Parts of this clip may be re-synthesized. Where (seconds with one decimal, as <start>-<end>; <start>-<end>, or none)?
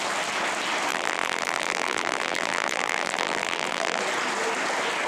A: 0.9-4.0